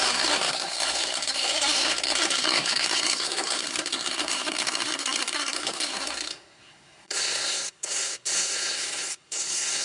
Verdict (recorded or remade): remade